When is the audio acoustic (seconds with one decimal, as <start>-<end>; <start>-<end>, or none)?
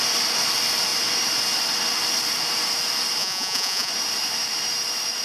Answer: 0.0-3.2; 3.9-5.2